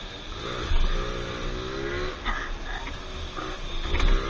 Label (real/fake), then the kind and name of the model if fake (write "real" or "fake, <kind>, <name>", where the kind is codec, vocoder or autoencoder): real